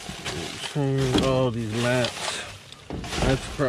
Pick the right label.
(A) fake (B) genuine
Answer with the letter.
B